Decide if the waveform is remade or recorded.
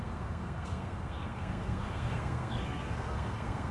remade